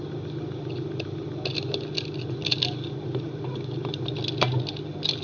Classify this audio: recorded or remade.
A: recorded